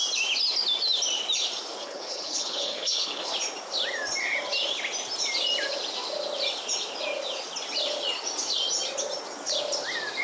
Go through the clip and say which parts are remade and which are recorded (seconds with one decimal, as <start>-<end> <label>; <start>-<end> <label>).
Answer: 0.0-1.8 recorded; 1.8-3.3 remade; 3.3-10.2 recorded